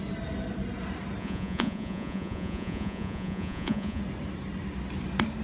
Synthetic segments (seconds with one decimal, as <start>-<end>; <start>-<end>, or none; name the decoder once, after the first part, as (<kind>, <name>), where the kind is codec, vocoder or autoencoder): 1.2-4.0 (vocoder, Vocos)